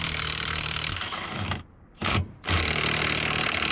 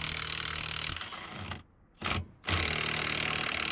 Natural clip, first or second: second